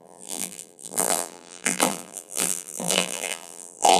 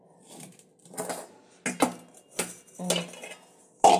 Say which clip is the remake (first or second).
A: first